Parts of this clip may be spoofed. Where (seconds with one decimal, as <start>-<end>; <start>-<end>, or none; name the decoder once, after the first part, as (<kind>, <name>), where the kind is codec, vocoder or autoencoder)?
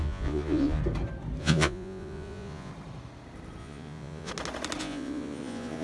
0.0-0.8 (vocoder, Vocos); 1.4-2.7; 3.6-4.3; 4.8-5.8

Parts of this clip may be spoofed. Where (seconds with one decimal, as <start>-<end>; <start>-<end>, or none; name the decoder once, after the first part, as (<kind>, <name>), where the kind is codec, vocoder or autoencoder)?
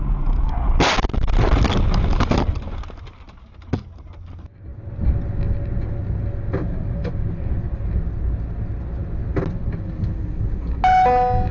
none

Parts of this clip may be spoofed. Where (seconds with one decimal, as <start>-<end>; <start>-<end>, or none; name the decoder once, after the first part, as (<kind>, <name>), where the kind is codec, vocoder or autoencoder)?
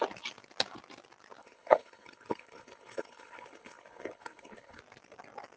1.4-4.8 (codec, HILCodec)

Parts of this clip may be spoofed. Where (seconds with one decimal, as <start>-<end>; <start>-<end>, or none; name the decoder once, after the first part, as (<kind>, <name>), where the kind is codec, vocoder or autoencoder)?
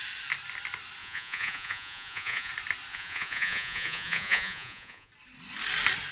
1.0-2.5 (vocoder, Vocos); 2.9-5.1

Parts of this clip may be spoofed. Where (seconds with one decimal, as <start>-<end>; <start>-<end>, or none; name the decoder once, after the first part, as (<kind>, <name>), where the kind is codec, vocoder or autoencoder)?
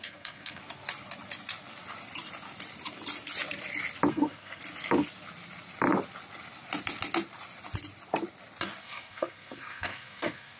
0.0-0.6 (codec, SNAC); 4.1-4.6; 8.8-10.6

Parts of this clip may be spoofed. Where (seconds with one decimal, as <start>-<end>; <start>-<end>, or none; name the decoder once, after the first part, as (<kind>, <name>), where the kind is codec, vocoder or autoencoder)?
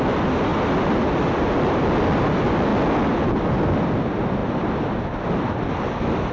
none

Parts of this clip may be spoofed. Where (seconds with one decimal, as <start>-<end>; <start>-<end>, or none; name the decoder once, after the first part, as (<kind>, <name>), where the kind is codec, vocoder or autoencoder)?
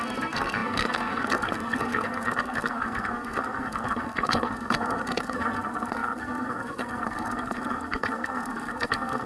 0.0-9.3 (codec, SNAC)